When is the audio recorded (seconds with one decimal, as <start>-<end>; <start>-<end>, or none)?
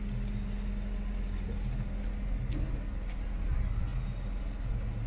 0.0-5.1